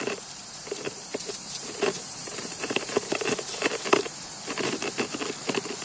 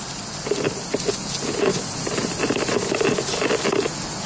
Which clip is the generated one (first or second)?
first